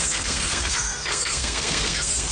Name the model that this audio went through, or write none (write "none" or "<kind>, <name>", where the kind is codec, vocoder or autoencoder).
codec, SNAC